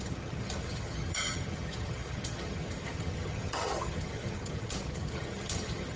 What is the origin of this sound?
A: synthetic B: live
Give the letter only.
A